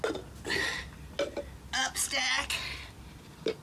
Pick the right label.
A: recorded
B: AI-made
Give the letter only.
A